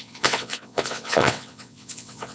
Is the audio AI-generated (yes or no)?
yes